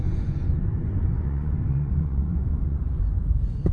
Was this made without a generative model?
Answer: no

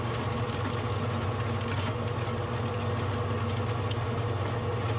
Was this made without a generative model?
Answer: yes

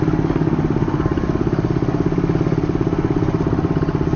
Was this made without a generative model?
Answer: yes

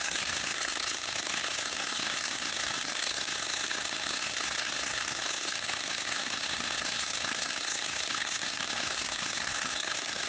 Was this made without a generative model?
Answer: no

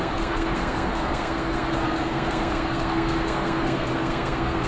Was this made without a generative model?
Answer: no